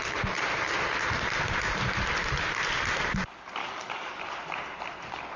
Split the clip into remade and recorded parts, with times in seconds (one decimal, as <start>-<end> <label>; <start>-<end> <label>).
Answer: 0.0-3.6 recorded; 3.6-4.2 remade; 4.2-5.4 recorded